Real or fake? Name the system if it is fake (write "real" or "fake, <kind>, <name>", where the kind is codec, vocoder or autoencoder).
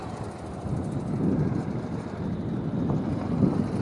real